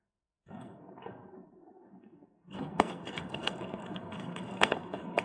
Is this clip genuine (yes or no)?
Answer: no